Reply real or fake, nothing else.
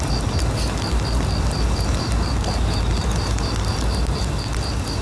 real